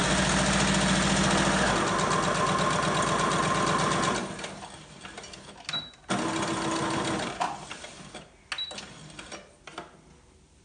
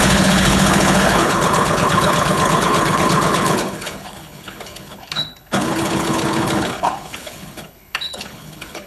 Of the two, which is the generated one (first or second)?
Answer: second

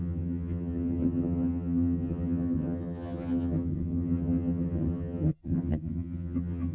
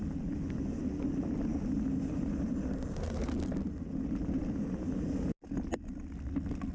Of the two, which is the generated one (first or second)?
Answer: first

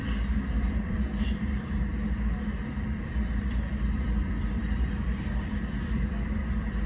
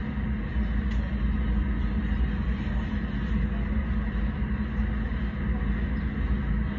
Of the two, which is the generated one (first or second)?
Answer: first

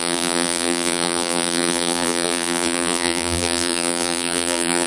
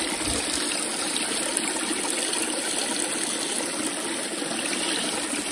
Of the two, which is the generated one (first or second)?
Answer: first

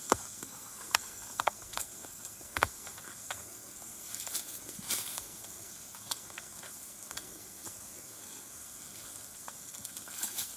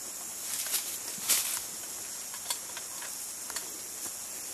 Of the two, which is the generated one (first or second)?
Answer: first